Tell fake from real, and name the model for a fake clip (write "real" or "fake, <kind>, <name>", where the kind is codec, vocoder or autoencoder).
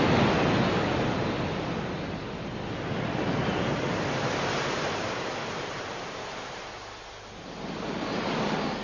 real